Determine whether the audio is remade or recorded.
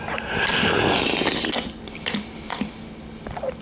recorded